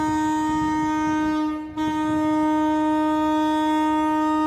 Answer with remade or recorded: recorded